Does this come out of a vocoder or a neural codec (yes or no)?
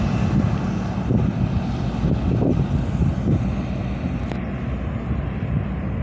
no